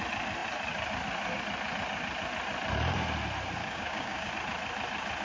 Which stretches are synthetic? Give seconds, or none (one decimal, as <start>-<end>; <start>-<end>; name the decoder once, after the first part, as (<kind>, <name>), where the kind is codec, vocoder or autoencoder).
3.6-4.3 (codec, DAC)